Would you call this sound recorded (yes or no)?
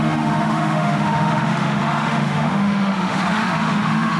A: no